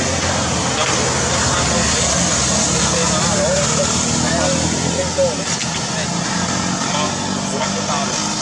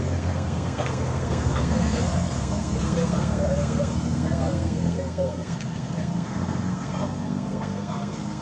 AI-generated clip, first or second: second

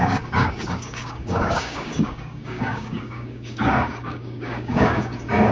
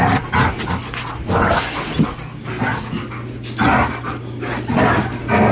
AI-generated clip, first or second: first